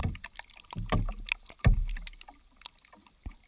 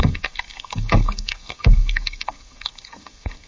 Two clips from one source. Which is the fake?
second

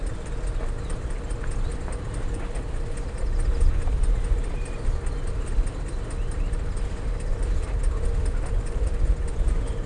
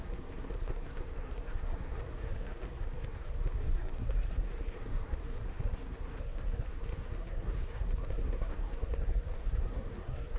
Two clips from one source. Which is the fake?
second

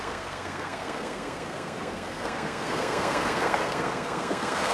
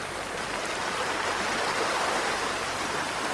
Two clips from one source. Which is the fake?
first